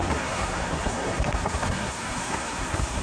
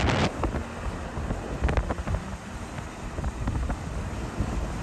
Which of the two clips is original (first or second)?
second